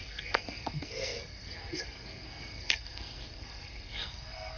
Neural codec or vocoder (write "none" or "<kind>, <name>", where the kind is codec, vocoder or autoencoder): codec, SNAC